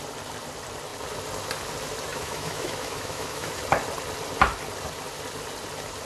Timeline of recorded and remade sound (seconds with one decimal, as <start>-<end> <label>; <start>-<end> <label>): 0.0-2.1 recorded; 2.1-3.6 remade; 3.6-6.1 recorded